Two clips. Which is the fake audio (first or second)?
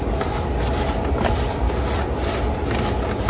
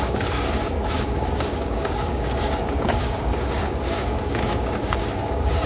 second